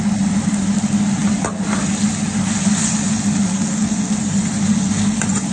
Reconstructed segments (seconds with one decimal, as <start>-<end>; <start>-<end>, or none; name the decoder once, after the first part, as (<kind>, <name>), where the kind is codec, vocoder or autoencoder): none